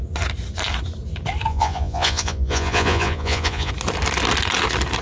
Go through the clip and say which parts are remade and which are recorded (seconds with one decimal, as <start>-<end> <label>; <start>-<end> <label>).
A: 0.0-1.5 recorded; 1.5-3.7 remade; 3.7-5.0 recorded